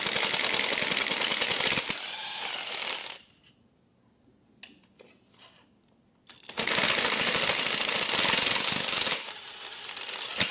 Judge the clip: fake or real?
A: real